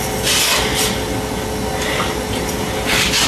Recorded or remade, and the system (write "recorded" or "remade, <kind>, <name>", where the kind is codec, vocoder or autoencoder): recorded